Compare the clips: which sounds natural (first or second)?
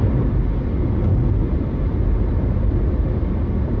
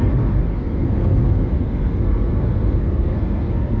first